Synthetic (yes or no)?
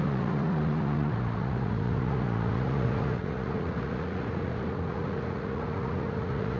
yes